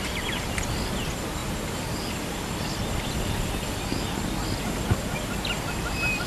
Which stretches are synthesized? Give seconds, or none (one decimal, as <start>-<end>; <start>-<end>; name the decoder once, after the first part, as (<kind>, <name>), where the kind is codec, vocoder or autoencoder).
none